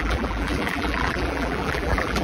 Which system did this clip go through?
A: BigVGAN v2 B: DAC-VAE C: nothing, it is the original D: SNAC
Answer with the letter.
A